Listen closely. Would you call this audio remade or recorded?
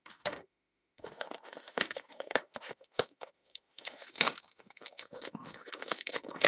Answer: remade